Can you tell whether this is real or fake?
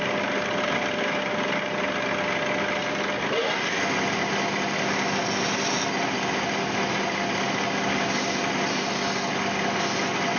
real